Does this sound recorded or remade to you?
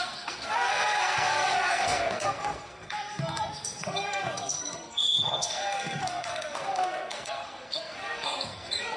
remade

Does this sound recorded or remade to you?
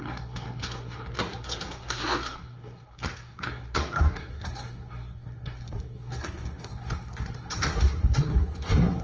remade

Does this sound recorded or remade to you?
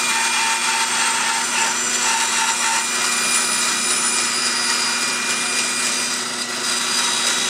recorded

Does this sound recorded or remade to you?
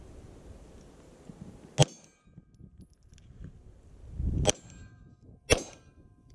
recorded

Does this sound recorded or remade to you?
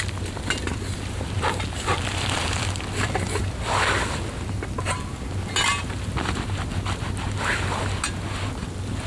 recorded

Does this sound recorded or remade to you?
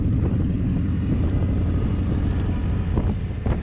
recorded